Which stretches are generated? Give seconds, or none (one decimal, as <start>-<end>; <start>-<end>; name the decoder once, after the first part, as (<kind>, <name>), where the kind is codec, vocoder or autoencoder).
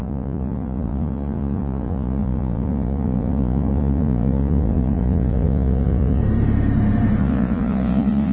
0.0-6.2 (vocoder, Vocos); 7.2-8.3